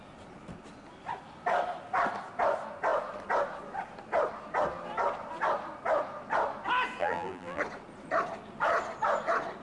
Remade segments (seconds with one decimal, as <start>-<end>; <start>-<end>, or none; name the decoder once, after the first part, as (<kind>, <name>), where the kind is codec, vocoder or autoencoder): 7.0-7.6 (vocoder, BigVGAN v2)